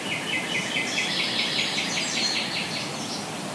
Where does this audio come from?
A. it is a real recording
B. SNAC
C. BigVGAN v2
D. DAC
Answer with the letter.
A